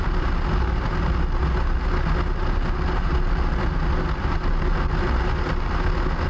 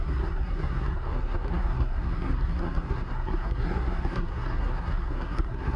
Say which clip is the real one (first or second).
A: first